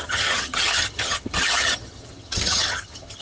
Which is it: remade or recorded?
remade